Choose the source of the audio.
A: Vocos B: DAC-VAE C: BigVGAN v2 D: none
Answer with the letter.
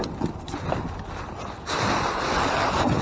D